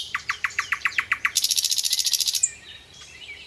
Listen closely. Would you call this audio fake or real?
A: fake